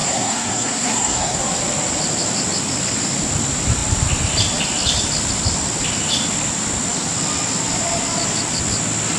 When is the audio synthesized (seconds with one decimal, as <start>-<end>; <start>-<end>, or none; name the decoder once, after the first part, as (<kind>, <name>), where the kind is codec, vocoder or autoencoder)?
0.0-1.4 (codec, SNAC)